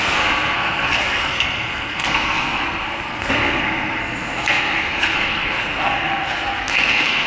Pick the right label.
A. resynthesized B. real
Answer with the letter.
A